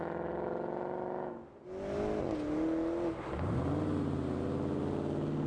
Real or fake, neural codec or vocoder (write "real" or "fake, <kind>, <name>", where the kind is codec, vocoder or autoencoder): real